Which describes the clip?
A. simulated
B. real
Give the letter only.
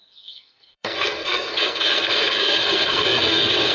A